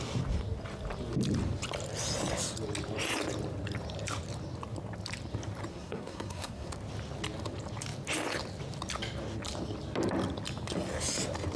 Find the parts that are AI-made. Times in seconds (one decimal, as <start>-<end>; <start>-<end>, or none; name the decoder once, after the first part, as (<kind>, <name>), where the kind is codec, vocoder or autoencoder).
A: 5.7-6.7 (codec, SNAC)